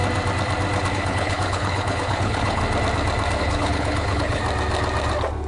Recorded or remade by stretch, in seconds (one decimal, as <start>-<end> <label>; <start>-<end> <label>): 0.0-0.9 recorded; 0.9-2.6 remade; 2.6-3.4 recorded; 3.4-4.4 remade; 4.4-5.5 recorded